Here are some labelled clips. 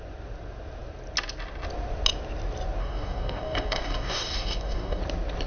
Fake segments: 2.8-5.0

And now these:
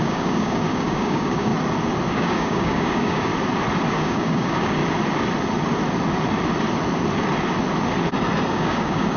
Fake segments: 0.0-1.5; 2.1-3.3; 3.9-4.8; 8.5-9.2